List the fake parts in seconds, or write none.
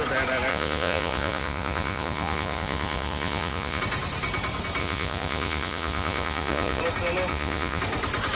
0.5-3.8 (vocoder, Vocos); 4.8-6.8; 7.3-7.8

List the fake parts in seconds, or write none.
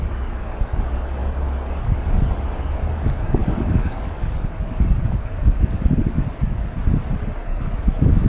0.0-6.8 (codec, DAC); 7.4-8.3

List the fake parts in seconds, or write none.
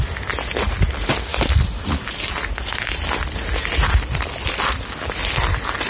none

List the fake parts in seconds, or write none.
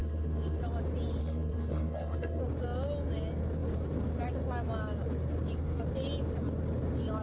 0.0-0.6 (codec, SNAC); 1.2-2.4